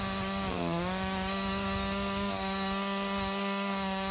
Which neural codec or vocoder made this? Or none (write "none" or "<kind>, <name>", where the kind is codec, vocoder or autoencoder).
codec, DAC